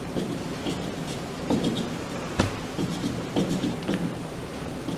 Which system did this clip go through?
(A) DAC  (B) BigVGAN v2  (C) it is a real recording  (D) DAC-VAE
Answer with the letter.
B